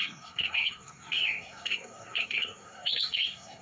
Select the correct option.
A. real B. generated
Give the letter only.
B